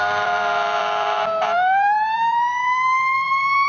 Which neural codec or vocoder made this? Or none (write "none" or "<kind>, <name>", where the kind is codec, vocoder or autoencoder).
vocoder, BigVGAN v2